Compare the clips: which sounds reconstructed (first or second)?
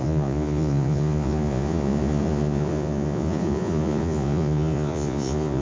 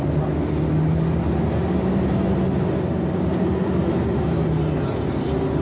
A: first